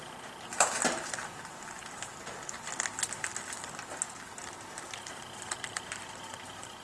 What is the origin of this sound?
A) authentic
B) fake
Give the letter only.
A